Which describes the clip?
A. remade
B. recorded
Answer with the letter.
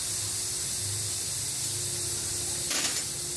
B